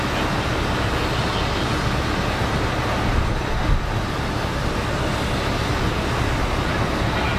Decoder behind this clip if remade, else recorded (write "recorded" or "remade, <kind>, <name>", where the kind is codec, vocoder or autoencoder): recorded